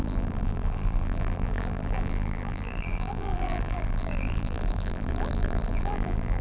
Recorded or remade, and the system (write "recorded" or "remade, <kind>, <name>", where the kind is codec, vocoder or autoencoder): remade, vocoder, BigVGAN v2